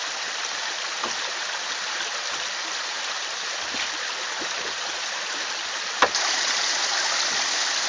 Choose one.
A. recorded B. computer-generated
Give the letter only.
A